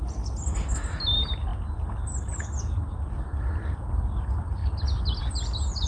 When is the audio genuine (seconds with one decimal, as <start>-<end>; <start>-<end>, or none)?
0.0-5.9